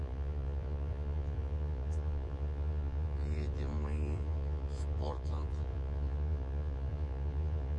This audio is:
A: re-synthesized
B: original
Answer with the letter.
A